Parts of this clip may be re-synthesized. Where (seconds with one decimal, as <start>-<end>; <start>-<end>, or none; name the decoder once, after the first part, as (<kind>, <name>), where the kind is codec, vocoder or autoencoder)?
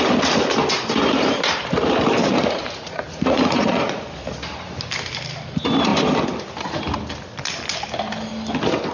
2.2-4.0 (vocoder, Vocos)